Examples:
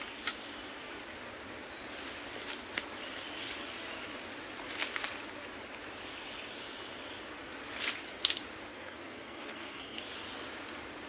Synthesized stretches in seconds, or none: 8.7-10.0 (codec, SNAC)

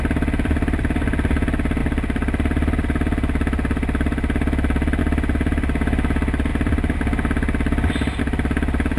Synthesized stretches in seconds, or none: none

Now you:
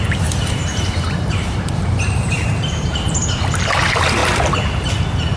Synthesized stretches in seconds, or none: 0.7-3.2 (vocoder, BigVGAN v2); 4.2-4.9

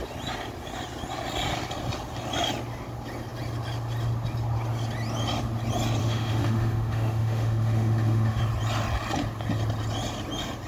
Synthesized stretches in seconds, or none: 6.0-8.4 (autoencoder, DAC-VAE)

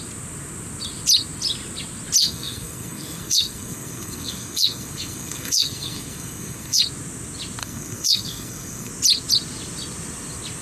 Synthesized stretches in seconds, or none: 2.2-6.8 (codec, SNAC); 7.6-8.9